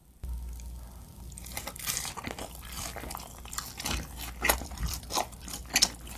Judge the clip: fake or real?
real